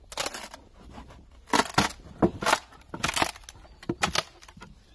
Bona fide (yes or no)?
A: yes